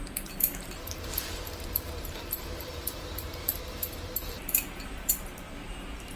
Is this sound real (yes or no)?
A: no